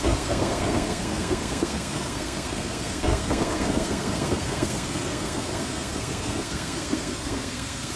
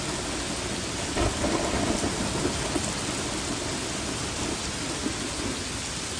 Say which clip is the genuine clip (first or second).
second